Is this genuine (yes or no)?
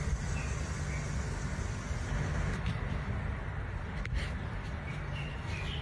yes